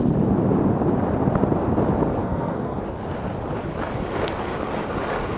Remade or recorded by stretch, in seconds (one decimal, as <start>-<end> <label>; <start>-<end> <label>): 0.0-2.2 recorded; 2.2-2.8 remade; 2.8-5.4 recorded